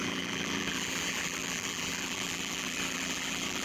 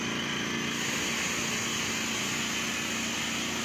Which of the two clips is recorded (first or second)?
second